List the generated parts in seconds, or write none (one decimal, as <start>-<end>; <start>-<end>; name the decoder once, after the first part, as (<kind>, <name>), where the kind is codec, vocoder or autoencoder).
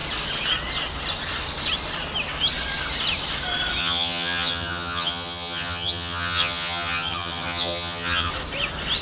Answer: 3.8-8.3 (vocoder, HiFi-GAN)